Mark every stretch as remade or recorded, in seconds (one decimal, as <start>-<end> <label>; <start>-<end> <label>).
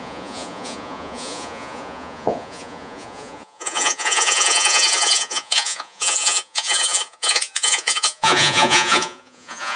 0.0-9.8 remade